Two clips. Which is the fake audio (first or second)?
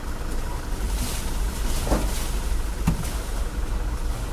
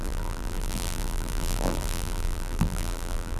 second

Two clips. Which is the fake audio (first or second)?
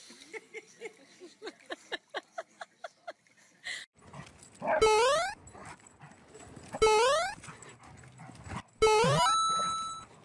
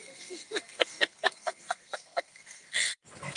second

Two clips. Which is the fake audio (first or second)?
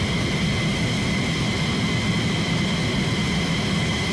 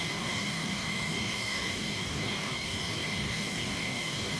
second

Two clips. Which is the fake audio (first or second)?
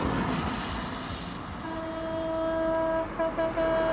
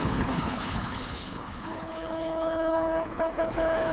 second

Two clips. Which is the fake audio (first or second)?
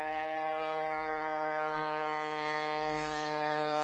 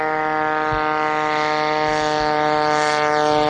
first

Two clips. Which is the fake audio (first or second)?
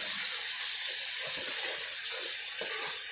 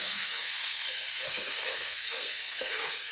second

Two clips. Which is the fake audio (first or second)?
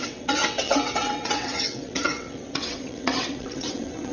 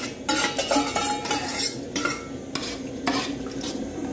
first